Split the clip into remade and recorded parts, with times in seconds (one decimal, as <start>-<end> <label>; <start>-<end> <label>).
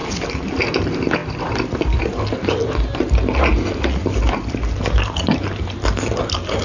0.0-6.6 recorded